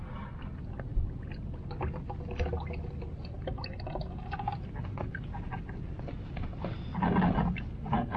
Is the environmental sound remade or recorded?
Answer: recorded